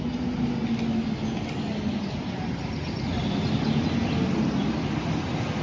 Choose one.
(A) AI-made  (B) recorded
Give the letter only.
B